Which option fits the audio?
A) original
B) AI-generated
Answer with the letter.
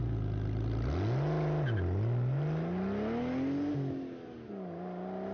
A